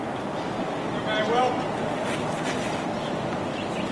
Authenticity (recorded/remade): recorded